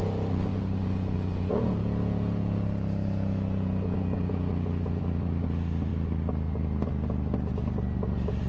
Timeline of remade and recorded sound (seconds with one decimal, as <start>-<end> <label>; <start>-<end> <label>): 0.0-0.5 recorded; 0.5-5.0 remade; 5.0-8.5 recorded